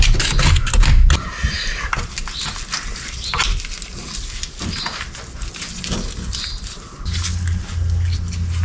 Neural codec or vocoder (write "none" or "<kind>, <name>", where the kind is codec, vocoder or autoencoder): none